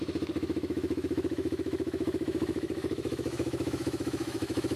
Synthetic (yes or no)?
yes